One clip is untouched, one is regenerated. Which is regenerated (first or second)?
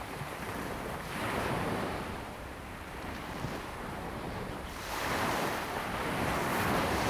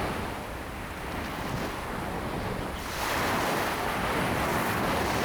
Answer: first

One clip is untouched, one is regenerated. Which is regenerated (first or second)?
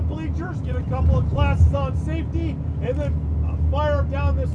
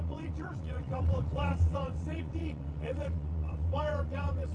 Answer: second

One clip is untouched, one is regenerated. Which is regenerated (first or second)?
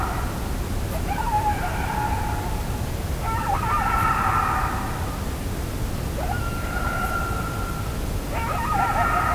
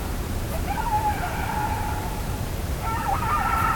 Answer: second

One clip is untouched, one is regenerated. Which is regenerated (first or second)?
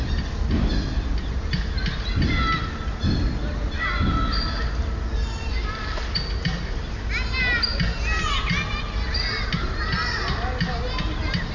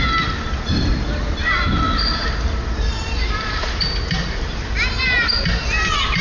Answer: second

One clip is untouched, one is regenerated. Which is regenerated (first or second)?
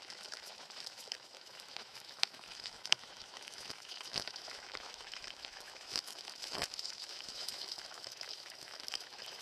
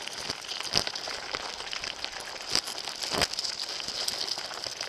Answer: first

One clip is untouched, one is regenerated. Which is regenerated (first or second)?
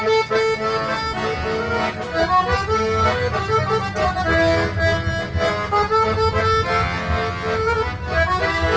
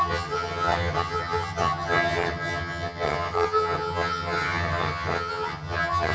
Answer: second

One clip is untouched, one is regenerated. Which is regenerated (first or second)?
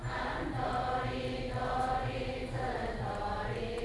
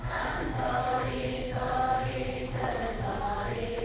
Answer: second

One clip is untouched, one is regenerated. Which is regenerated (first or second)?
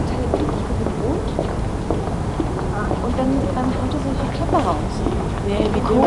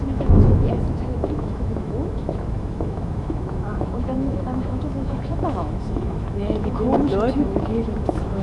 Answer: second